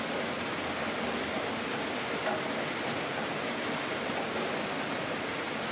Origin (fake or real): real